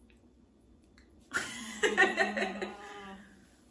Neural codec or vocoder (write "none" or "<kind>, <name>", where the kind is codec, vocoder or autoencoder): vocoder, Vocos